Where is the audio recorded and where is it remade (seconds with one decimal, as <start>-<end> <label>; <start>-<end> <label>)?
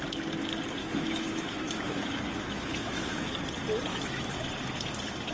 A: 0.0-0.8 recorded; 0.8-3.3 remade; 3.3-3.9 recorded; 3.9-4.4 remade; 4.4-5.3 recorded